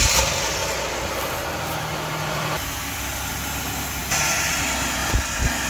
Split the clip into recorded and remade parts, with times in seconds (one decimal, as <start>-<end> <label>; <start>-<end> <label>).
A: 0.0-5.7 recorded